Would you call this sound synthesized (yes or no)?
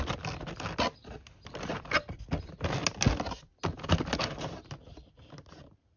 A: no